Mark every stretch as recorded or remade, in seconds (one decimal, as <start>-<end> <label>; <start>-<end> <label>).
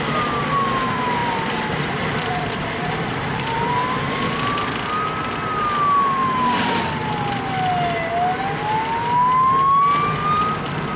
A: 0.0-1.2 recorded; 1.2-3.7 remade; 3.7-11.0 recorded